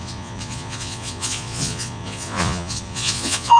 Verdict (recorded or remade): remade